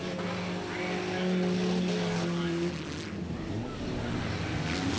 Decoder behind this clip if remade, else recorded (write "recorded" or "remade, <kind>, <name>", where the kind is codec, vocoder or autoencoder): recorded